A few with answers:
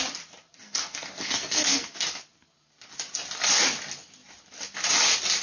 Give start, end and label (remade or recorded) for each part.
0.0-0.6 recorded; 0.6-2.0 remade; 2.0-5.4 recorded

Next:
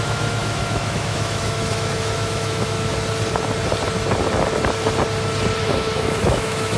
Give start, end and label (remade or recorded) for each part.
0.0-2.9 remade; 2.9-5.6 recorded; 5.6-6.8 remade

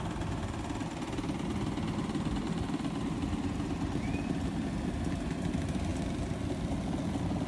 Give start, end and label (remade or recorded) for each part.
0.0-7.5 recorded